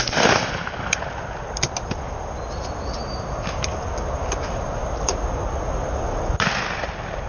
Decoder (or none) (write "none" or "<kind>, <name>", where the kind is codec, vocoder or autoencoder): none